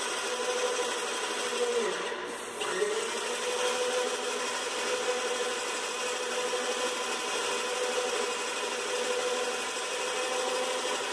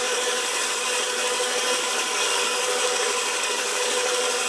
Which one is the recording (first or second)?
first